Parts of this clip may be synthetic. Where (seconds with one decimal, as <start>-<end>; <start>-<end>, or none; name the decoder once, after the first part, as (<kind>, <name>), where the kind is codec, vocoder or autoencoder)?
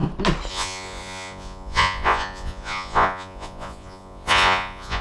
0.5-5.0 (vocoder, Vocos)